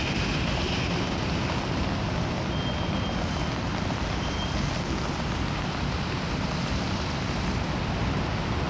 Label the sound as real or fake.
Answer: real